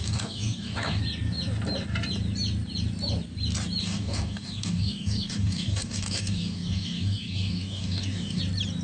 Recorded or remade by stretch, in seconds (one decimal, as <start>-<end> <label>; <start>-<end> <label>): 0.0-1.0 remade; 1.0-3.8 recorded; 3.8-8.4 remade; 8.4-8.8 recorded